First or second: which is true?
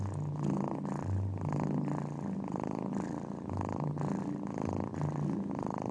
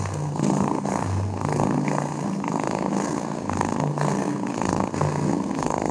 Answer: first